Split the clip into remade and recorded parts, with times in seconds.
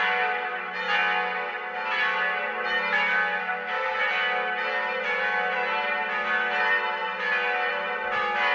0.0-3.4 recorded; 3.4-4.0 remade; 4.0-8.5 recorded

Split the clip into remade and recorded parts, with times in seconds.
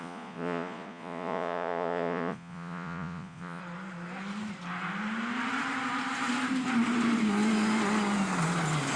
0.0-3.6 remade; 3.6-9.0 recorded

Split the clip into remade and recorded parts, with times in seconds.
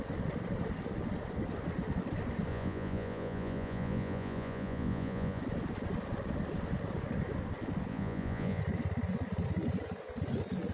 0.0-2.5 recorded; 2.5-5.4 remade; 5.4-7.9 recorded; 7.9-8.6 remade; 8.6-10.7 recorded